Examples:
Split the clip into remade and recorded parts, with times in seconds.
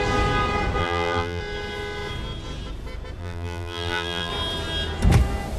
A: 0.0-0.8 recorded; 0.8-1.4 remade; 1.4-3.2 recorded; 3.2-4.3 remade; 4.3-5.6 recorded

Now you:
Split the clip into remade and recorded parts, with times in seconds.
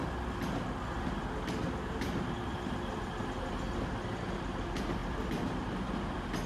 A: 0.0-6.5 recorded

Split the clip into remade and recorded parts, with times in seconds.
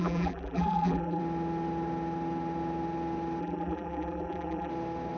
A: 0.0-1.2 remade; 1.2-3.4 recorded; 3.4-4.7 remade; 4.7-5.2 recorded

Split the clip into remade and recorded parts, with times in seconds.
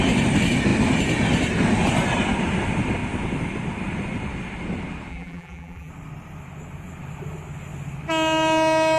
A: 0.0-5.1 recorded; 5.1-5.9 remade; 5.9-9.0 recorded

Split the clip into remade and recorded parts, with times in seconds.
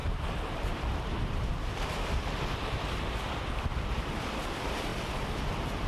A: 0.0-5.9 remade